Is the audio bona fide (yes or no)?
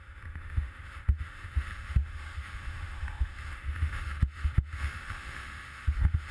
no